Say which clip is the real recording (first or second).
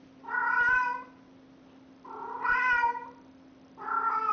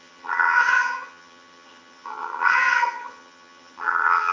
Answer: first